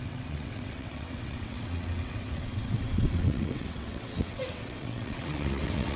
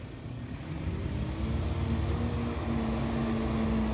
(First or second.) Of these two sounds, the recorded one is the second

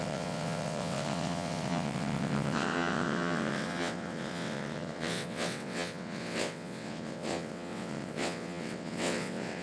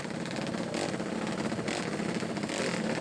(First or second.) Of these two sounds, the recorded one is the second